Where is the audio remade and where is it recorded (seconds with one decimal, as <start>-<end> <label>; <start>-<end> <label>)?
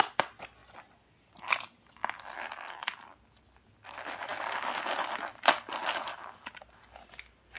0.0-7.6 recorded